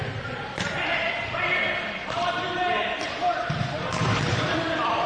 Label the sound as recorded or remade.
remade